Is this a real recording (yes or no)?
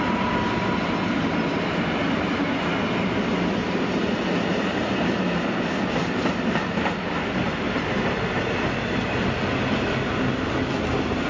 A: yes